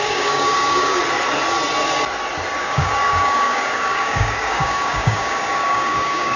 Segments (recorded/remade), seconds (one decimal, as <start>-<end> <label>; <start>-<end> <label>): 0.0-1.0 remade; 1.0-2.6 recorded; 2.6-6.4 remade